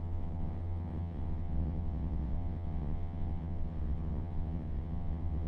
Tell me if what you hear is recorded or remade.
remade